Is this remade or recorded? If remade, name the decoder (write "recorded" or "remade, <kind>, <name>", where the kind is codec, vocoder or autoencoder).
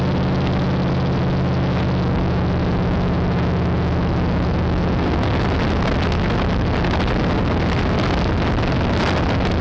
recorded